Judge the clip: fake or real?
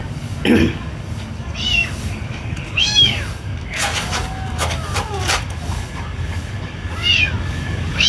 fake